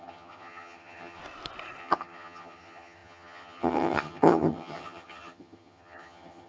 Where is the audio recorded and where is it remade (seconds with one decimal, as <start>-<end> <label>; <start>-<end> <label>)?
0.0-1.2 remade; 1.2-1.8 recorded; 1.8-6.5 remade